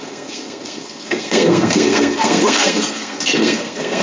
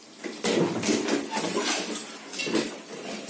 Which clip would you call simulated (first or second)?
first